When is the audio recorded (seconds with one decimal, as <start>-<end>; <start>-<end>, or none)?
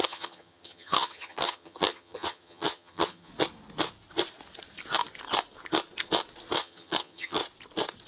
3.3-6.6; 7.4-8.1